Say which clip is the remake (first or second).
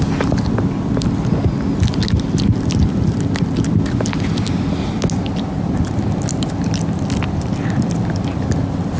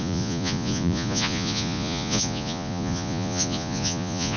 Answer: second